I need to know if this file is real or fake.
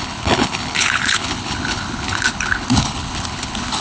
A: fake